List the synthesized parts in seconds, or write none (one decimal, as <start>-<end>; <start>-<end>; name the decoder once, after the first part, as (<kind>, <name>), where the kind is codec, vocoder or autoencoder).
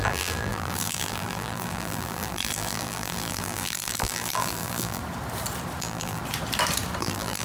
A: 0.0-5.0 (vocoder, BigVGAN v2); 5.8-6.2; 7.0-7.4